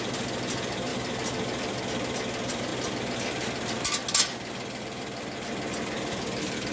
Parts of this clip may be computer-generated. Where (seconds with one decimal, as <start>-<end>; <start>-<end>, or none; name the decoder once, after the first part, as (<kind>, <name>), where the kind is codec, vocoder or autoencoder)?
none